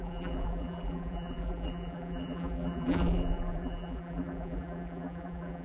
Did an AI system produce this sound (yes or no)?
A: yes